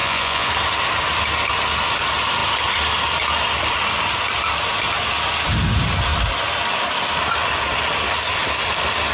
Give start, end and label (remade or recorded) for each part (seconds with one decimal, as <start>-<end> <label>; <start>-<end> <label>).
0.0-0.5 remade; 0.5-9.1 recorded